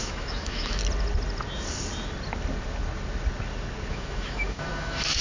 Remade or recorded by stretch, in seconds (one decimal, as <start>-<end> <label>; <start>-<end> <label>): 0.0-0.8 remade; 0.8-3.9 recorded; 3.9-5.2 remade